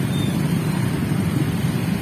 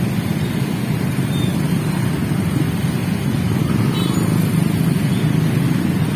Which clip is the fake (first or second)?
first